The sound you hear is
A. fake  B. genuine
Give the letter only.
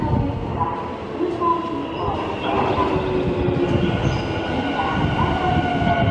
B